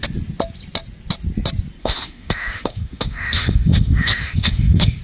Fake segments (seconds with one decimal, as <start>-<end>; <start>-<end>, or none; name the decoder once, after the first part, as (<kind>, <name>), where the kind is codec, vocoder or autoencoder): 1.8-5.0 (autoencoder, DAC-VAE)